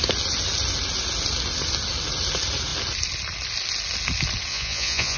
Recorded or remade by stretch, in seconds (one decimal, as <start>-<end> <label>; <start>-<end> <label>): 0.0-4.5 recorded; 4.5-5.2 remade